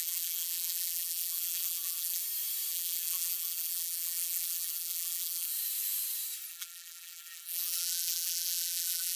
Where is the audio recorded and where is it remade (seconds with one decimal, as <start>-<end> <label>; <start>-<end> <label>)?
0.0-2.2 remade; 2.2-2.7 recorded; 2.7-5.5 remade; 5.5-6.5 recorded; 6.5-9.2 remade